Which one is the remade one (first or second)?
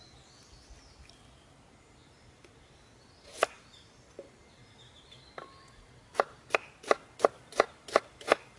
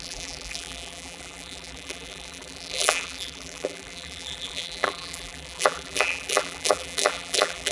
second